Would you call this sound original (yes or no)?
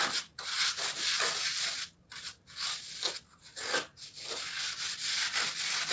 yes